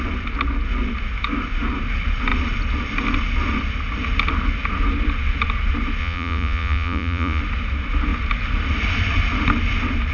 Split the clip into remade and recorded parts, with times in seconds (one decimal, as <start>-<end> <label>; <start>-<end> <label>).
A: 0.0-6.0 recorded; 6.0-7.4 remade; 7.4-10.1 recorded